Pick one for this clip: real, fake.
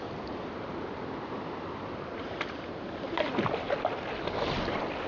real